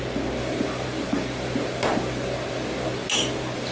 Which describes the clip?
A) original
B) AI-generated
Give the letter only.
A